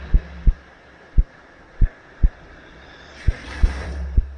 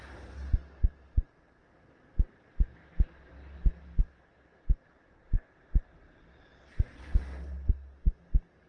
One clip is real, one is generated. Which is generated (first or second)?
first